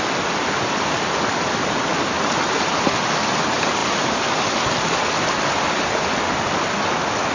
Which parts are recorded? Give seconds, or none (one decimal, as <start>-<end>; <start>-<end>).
0.0-7.3